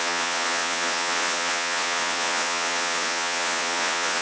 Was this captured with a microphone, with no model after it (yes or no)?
no